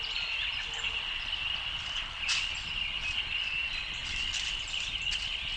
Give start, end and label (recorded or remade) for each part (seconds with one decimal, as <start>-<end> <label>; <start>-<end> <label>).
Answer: 0.0-5.6 recorded